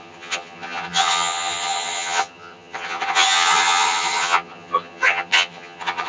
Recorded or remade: remade